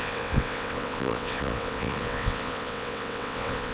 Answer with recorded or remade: remade